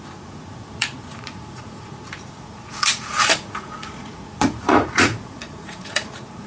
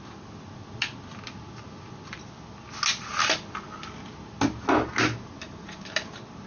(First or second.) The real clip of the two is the second